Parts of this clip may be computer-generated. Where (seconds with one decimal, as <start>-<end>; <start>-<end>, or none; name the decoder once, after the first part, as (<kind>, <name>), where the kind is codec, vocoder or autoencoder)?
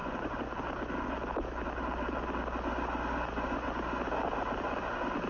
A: 0.0-0.6 (vocoder, Vocos)